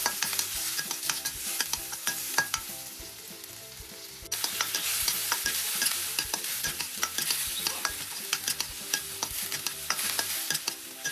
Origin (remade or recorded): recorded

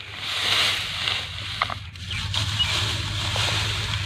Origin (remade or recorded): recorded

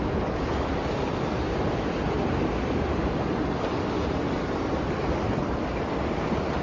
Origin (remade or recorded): recorded